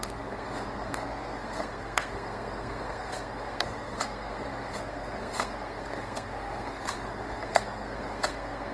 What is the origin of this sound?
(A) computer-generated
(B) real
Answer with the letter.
A